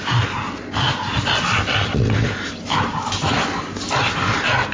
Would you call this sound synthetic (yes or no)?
no